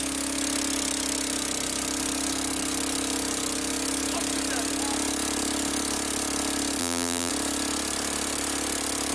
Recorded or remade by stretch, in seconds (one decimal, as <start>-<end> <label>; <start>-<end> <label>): 0.0-6.8 recorded; 6.8-7.3 remade; 7.3-9.1 recorded